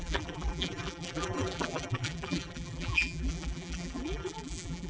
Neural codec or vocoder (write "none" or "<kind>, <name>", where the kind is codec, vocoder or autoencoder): vocoder, BigVGAN v2